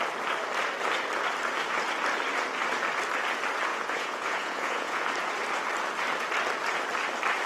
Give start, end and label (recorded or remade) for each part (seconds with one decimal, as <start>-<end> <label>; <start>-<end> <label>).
0.0-3.7 recorded; 3.7-5.1 remade; 5.1-7.5 recorded